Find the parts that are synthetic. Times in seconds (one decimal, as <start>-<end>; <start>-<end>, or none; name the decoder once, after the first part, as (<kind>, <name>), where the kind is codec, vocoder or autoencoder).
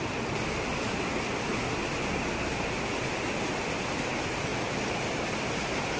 none